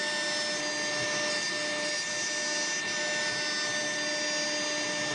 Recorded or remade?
recorded